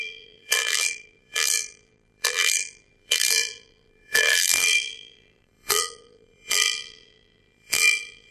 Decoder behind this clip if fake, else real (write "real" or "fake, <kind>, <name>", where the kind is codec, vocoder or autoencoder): fake, vocoder, BigVGAN v2